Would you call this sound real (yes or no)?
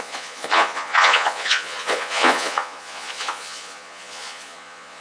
no